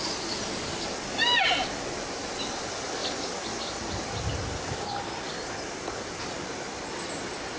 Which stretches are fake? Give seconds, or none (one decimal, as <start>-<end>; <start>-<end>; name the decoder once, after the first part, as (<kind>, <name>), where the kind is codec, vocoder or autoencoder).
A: none